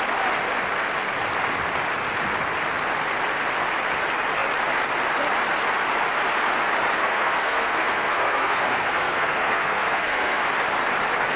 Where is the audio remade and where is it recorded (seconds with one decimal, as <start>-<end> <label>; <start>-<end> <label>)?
0.0-7.0 recorded; 7.0-10.5 remade; 10.5-11.4 recorded